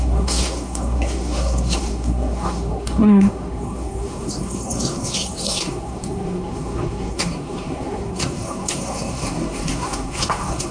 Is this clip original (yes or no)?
no